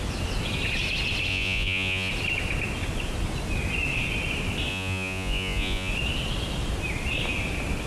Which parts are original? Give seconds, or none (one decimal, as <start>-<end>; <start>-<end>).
0.0-1.3; 2.1-4.7; 5.9-7.9